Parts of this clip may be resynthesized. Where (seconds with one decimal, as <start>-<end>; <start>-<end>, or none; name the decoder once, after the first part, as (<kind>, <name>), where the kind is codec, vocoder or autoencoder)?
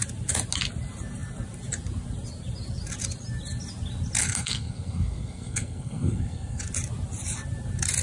4.2-6.6 (codec, SNAC)